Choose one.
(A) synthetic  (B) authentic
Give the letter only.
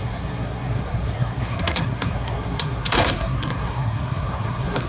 A